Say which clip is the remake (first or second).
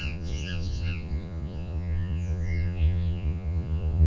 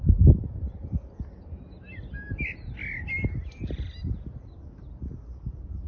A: first